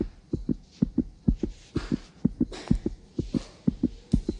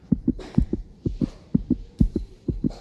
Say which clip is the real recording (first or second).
first